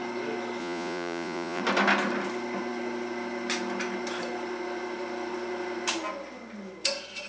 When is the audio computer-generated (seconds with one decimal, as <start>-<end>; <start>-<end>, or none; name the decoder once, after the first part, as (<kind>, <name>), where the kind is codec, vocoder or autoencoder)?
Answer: 0.6-1.6 (vocoder, Vocos)